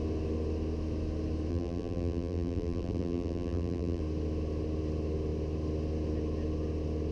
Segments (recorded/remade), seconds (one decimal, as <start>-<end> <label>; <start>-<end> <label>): 0.0-1.5 recorded; 1.5-4.0 remade; 4.0-7.1 recorded